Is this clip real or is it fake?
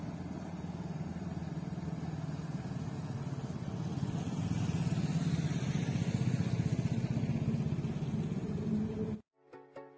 real